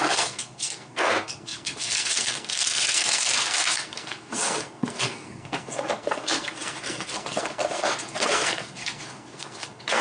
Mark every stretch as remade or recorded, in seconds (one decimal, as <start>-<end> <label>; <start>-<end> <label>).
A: 0.0-10.0 remade